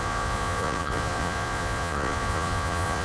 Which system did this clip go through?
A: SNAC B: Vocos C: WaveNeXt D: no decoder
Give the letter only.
B